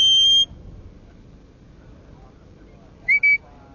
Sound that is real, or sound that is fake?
real